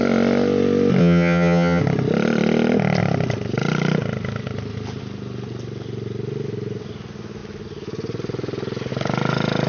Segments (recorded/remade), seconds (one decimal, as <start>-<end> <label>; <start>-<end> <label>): 0.0-1.0 recorded; 1.0-1.8 remade; 1.8-9.7 recorded